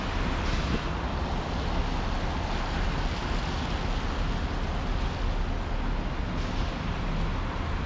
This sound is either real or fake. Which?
real